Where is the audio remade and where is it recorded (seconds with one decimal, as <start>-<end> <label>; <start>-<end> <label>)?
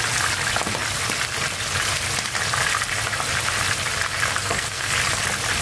0.0-4.4 recorded; 4.4-4.9 remade; 4.9-5.6 recorded